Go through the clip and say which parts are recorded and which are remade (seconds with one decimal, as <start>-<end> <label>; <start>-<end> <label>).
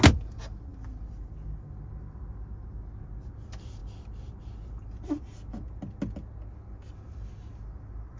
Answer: 0.0-8.2 recorded